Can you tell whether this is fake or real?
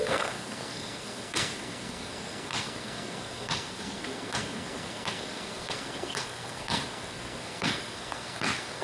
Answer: fake